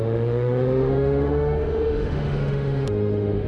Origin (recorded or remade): remade